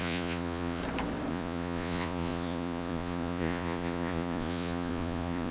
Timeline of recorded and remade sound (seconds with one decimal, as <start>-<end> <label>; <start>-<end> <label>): 0.0-0.8 remade; 0.8-1.3 recorded; 1.3-5.5 remade